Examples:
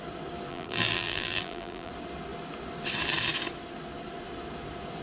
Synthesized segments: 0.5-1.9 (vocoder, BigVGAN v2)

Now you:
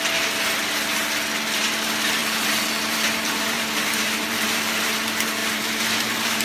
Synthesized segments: 2.2-4.8 (vocoder, BigVGAN v2); 5.4-6.4

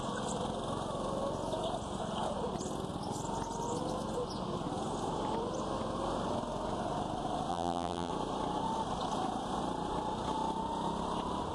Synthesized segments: 7.5-8.1 (vocoder, BigVGAN v2)

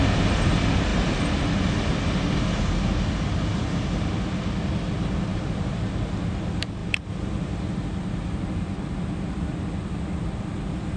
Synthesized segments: 5.3-6.1 (vocoder, BigVGAN v2); 6.8-9.0

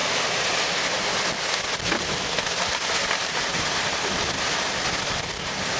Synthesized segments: 0.0-0.7 (vocoder, BigVGAN v2)

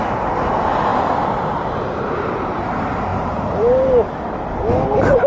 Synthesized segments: 3.1-3.9 (vocoder, BigVGAN v2)